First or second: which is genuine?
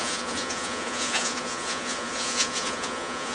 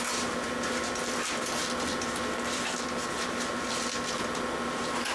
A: second